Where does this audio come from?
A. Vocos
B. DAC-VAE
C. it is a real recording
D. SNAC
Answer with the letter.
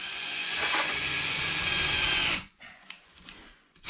A